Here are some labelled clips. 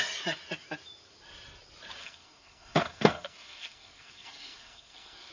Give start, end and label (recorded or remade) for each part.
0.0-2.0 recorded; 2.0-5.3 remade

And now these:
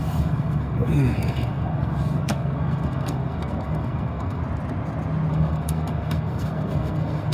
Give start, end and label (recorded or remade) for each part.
0.0-4.4 remade; 4.4-5.3 recorded; 5.3-7.3 remade